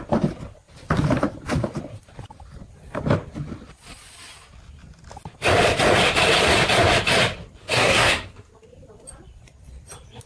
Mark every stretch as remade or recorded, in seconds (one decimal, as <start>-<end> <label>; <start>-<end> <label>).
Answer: 0.0-7.6 recorded; 7.6-8.5 remade; 8.5-10.3 recorded